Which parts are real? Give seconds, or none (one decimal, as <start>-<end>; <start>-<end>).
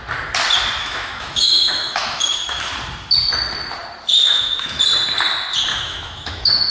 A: 0.0-0.8; 2.7-4.2; 4.8-5.7